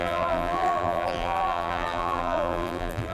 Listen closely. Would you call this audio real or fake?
fake